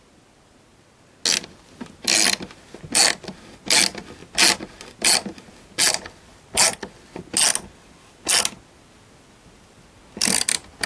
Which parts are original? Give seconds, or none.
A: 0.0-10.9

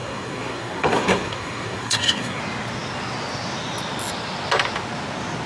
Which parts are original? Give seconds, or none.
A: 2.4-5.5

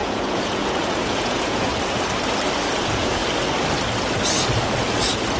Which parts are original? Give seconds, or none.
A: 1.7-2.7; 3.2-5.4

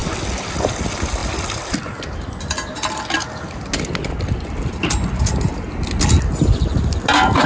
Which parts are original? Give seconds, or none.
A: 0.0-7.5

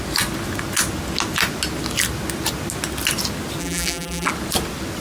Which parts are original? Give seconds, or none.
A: 0.0-3.6; 4.3-5.0

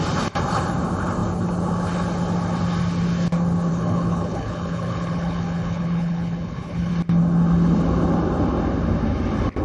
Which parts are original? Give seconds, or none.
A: 0.0-3.7; 6.9-9.6

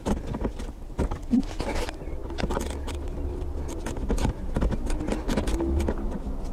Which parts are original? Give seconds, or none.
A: 0.0-6.5

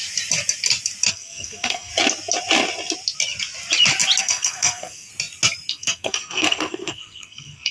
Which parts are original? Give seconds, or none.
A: 0.0-1.1; 1.9-4.2; 5.1-5.7